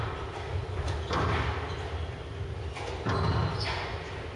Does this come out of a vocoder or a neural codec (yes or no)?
no